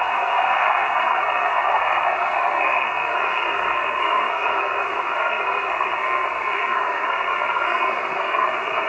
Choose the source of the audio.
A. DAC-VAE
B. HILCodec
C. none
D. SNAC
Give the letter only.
D